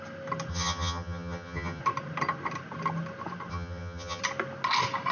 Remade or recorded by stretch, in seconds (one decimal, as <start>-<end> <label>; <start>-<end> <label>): 0.0-0.5 recorded; 0.5-1.8 remade; 1.8-3.5 recorded; 3.5-4.2 remade; 4.2-5.1 recorded